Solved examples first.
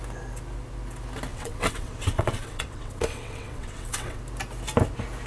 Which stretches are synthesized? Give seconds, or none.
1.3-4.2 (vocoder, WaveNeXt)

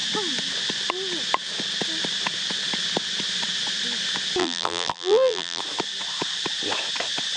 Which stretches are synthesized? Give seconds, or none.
4.4-5.6 (vocoder, BigVGAN v2)

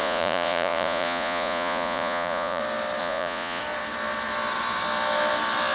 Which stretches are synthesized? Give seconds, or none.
0.0-2.6 (vocoder, Vocos); 3.0-3.6

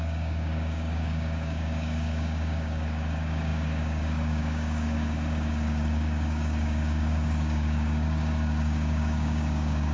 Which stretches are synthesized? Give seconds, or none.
0.0-9.9 (codec, DAC)

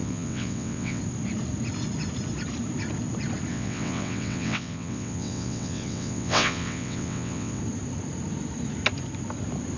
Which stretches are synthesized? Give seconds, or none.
0.0-1.0 (vocoder, WaveNeXt); 3.5-7.6

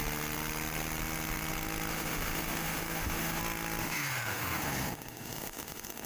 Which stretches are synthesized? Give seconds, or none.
1.9-3.4 (autoencoder, DAC-VAE); 3.8-6.1

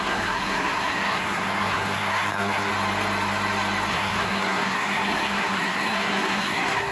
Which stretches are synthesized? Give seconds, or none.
0.0-2.7 (codec, SNAC); 3.9-6.9